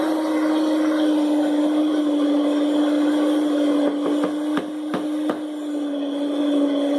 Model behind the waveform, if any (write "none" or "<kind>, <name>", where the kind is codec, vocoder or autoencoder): none